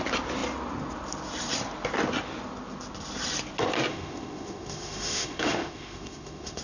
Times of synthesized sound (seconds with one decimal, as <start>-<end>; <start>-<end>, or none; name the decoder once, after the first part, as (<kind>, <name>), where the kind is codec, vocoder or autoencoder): 3.9-6.6 (autoencoder, DAC-VAE)